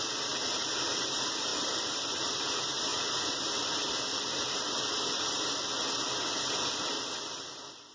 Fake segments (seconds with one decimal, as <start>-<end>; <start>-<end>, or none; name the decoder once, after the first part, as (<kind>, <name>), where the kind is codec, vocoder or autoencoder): 1.5-2.5 (vocoder, BigVGAN v2); 2.9-3.7